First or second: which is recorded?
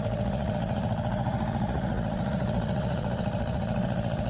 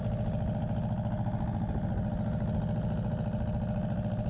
second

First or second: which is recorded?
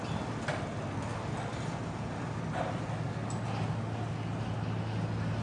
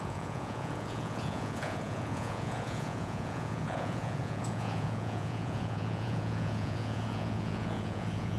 first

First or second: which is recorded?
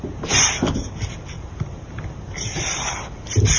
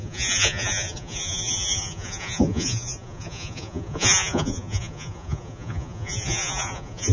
first